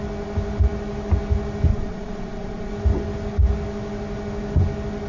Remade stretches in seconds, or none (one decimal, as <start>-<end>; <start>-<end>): 1.7-2.7